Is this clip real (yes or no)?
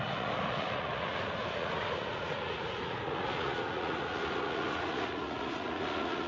no